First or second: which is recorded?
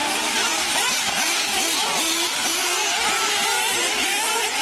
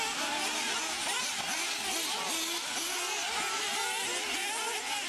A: second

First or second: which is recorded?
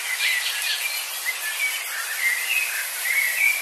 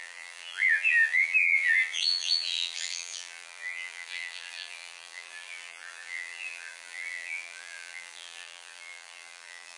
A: first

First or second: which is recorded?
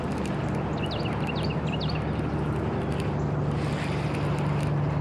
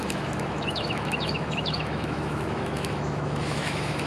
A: first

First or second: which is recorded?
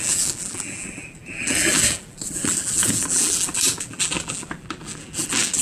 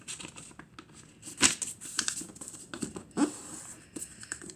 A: second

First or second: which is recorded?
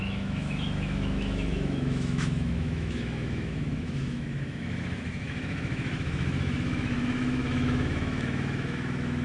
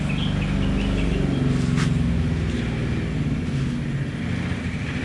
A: second